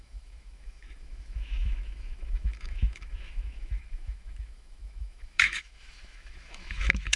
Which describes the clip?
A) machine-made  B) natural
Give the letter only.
A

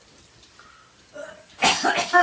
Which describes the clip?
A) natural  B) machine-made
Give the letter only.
A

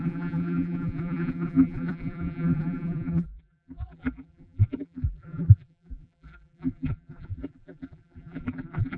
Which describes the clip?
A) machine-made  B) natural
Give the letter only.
A